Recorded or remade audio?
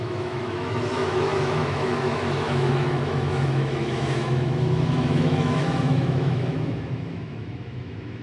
remade